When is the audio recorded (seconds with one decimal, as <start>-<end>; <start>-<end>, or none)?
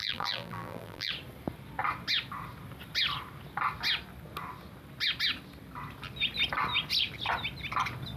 1.1-8.2